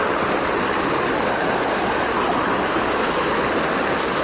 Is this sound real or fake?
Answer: real